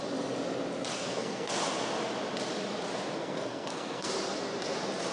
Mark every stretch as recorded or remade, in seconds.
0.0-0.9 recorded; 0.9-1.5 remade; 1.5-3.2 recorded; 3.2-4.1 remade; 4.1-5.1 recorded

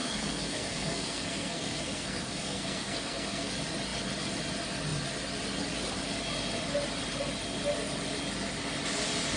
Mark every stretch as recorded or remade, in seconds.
0.0-3.5 remade; 3.5-9.4 recorded